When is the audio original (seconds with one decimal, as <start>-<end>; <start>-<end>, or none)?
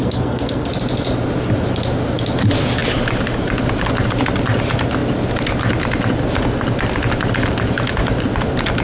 0.7-8.8